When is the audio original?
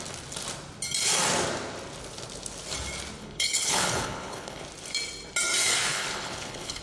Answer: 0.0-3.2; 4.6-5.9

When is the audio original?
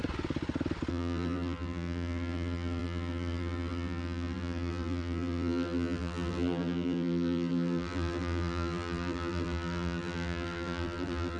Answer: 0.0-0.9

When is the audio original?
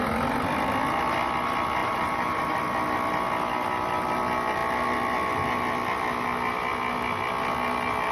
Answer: 0.0-1.8; 2.4-8.1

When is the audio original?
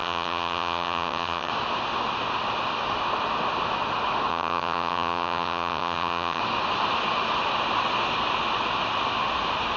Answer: 1.5-4.3; 6.4-9.8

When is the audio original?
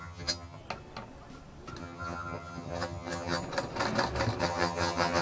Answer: 0.6-1.8; 3.4-4.4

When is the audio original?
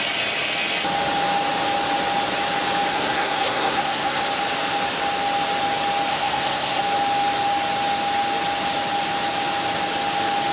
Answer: 0.0-2.9; 4.2-6.1; 6.8-10.5